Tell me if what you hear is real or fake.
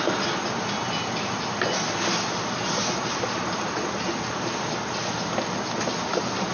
real